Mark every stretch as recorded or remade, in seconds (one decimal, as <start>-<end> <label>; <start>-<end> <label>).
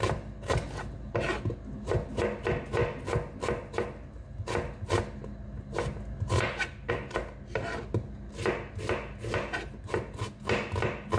0.0-11.2 recorded